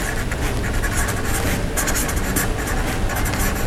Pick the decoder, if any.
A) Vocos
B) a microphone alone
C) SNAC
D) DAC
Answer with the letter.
B